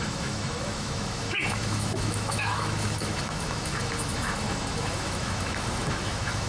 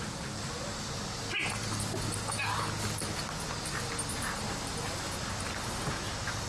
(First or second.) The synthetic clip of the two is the first